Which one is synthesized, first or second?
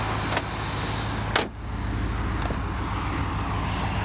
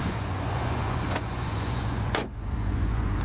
second